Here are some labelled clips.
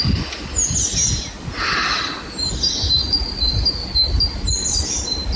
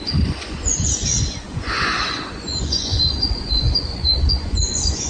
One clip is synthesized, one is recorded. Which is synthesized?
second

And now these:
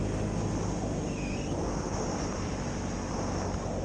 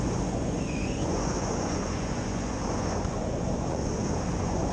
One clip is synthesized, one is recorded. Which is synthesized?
second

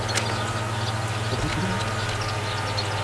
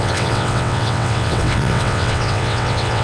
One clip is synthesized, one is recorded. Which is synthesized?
second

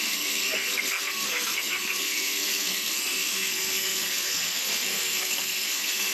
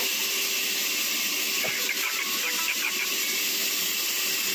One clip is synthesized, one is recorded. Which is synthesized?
first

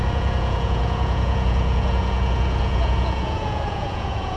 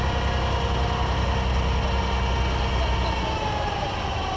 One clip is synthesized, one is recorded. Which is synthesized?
first